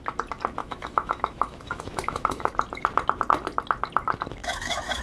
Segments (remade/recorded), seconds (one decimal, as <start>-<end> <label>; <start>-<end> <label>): 0.0-0.6 recorded; 0.6-2.5 remade; 2.5-4.4 recorded; 4.4-5.0 remade